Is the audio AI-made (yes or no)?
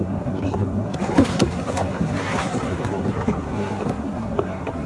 yes